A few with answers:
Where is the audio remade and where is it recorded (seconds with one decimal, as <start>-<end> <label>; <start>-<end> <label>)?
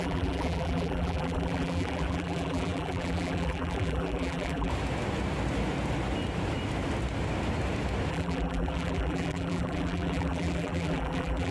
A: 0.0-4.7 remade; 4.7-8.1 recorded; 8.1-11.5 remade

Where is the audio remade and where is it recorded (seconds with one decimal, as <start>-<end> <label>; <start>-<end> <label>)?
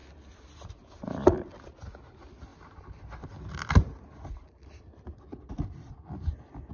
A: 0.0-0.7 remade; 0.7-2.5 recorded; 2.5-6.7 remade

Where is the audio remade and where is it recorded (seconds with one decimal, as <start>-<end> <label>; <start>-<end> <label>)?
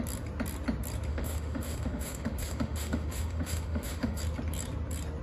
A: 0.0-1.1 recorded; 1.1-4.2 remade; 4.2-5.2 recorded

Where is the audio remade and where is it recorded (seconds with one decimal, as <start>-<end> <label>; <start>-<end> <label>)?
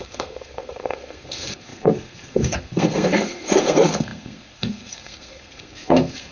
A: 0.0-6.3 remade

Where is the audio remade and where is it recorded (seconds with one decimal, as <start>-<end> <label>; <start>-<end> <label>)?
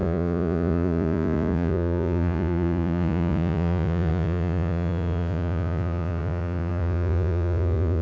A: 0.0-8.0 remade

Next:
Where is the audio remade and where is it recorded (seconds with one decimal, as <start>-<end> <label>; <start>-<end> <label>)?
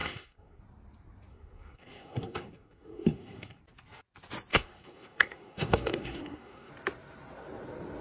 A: 0.0-0.6 remade; 0.6-1.3 recorded; 1.3-3.6 remade; 3.6-4.5 recorded; 4.5-6.7 remade; 6.7-8.0 recorded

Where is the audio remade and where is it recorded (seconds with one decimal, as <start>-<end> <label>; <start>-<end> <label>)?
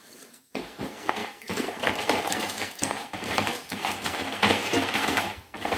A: 0.0-5.8 remade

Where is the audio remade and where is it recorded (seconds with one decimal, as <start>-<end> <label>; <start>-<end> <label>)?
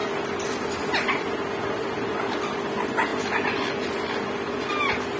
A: 0.0-5.2 recorded